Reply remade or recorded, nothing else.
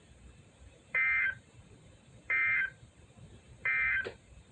remade